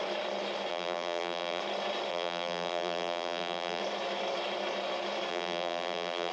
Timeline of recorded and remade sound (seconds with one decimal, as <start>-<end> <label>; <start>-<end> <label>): 0.0-0.7 recorded; 0.7-1.6 remade; 1.6-2.1 recorded; 2.1-3.8 remade; 3.8-5.3 recorded; 5.3-6.3 remade